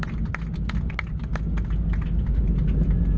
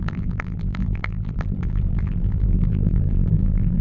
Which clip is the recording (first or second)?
first